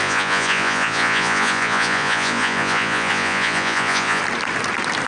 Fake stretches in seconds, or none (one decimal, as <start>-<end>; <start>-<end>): 0.0-4.2